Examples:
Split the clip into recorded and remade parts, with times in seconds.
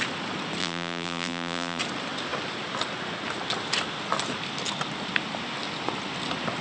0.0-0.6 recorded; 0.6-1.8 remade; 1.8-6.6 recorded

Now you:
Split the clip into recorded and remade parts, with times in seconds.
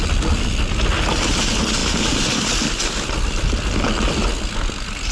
0.0-5.1 recorded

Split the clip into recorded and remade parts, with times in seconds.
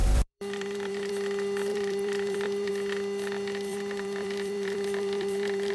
0.0-1.1 remade; 1.1-1.7 recorded; 1.7-2.7 remade; 2.7-3.7 recorded; 3.7-5.7 remade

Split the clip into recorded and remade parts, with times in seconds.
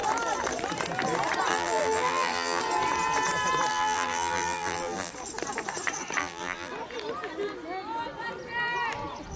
0.0-1.5 recorded; 1.5-2.6 remade; 2.6-3.7 recorded; 3.7-5.1 remade; 5.1-6.2 recorded; 6.2-6.7 remade; 6.7-9.4 recorded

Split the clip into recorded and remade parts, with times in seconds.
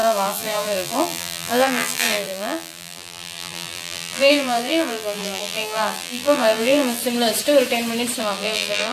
0.0-7.0 remade; 7.0-8.2 recorded; 8.2-8.9 remade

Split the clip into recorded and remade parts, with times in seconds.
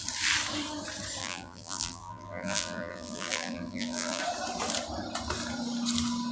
0.0-1.2 recorded; 1.2-4.2 remade; 4.2-6.3 recorded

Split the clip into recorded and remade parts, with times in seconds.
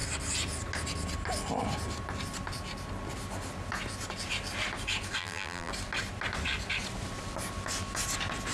0.0-5.2 recorded; 5.2-5.7 remade; 5.7-8.5 recorded